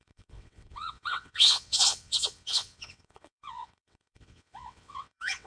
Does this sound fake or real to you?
fake